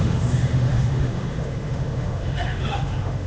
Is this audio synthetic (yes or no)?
yes